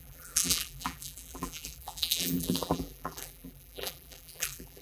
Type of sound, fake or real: fake